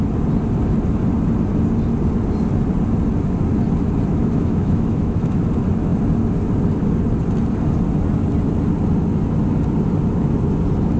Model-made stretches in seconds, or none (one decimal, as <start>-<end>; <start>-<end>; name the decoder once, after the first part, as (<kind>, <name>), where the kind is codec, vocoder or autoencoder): 4.1-5.4 (autoencoder, DAC-VAE)